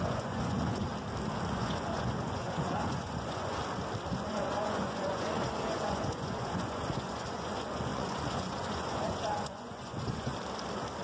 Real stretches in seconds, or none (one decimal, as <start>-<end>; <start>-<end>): 0.9-1.5; 3.6-4.1; 10.3-11.0